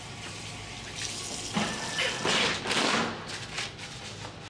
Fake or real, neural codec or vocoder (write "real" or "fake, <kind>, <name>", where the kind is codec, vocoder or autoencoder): real